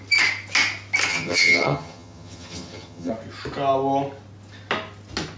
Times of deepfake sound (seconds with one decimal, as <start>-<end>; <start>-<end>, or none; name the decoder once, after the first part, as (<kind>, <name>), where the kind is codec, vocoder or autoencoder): 1.1-3.1 (vocoder, HiFi-GAN)